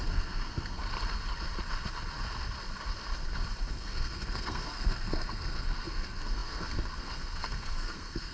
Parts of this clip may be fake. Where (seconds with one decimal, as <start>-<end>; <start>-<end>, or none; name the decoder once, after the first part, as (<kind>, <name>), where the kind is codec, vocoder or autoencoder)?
0.0-0.8 (codec, SNAC); 3.7-8.3